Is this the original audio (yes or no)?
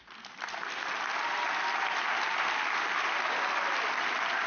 yes